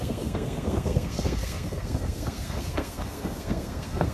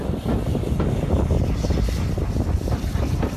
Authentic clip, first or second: second